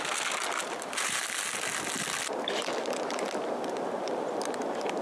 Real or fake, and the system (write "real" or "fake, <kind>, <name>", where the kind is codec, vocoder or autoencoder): real